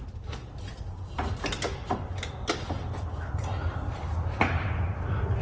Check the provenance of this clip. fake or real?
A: real